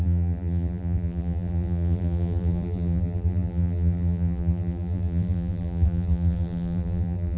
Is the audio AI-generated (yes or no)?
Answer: yes